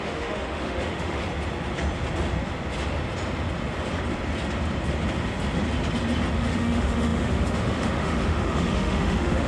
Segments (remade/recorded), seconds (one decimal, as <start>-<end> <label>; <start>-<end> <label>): 0.0-1.2 remade; 1.2-6.3 recorded; 6.3-9.5 remade